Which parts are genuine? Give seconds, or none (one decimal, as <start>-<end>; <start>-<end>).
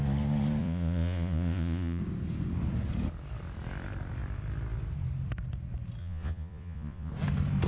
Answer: 0.0-0.6; 2.0-6.0; 7.1-7.7